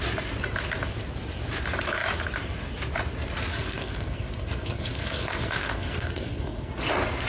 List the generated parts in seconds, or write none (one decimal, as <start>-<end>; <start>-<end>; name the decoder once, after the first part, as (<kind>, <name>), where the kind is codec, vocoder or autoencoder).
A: 3.5-6.7 (codec, SNAC)